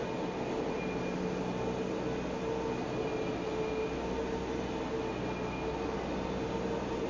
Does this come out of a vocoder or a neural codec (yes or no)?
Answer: no